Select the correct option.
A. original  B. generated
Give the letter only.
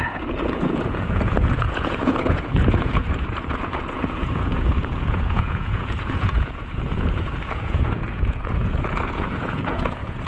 B